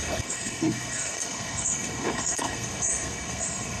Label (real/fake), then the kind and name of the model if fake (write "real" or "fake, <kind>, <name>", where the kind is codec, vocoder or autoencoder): fake, codec, SNAC